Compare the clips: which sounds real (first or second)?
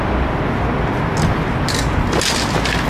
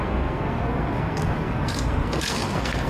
first